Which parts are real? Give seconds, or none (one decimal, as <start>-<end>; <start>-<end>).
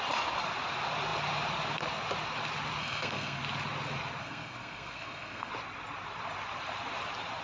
0.0-2.8; 3.4-4.2; 5.5-7.4